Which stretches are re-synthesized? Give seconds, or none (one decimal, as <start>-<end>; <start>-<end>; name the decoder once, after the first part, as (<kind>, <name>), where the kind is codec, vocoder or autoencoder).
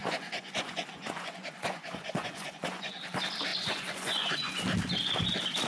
0.0-3.0 (vocoder, Vocos); 3.5-4.6